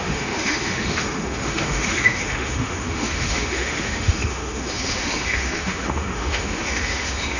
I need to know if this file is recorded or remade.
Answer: remade